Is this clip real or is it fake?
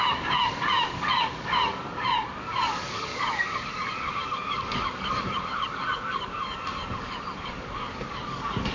fake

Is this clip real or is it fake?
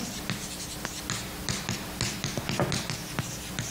real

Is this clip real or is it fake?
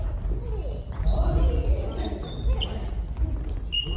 real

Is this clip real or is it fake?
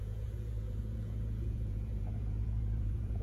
fake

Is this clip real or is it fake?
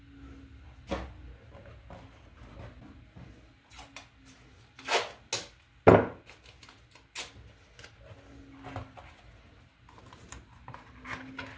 real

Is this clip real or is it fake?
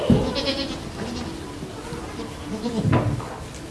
real